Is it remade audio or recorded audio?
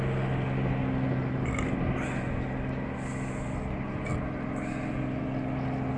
recorded